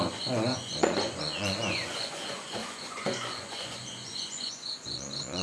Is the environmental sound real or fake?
fake